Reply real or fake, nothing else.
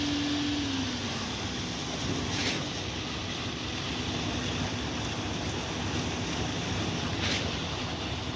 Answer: real